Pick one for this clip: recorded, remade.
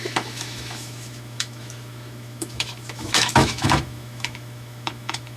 remade